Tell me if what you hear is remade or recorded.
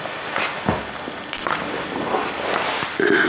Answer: recorded